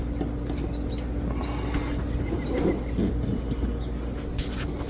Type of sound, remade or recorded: recorded